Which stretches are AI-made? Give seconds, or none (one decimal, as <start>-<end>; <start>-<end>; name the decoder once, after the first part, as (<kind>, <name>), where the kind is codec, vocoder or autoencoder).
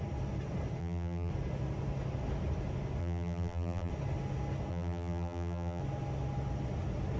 0.8-1.3 (vocoder, BigVGAN v2); 3.0-3.9; 4.7-5.8